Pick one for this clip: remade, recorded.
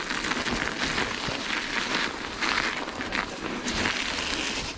recorded